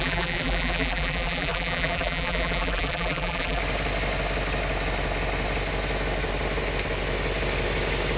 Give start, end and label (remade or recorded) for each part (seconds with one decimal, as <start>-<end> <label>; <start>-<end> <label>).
0.0-3.6 remade; 3.6-8.2 recorded